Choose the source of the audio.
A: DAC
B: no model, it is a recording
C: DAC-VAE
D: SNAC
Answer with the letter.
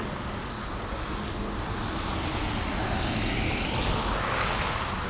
B